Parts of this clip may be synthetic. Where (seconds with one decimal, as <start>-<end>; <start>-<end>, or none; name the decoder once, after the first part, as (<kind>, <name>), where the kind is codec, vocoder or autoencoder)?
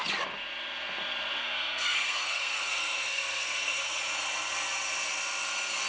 1.4-4.0 (codec, SNAC)